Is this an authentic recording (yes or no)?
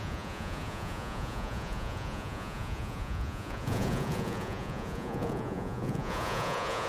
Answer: no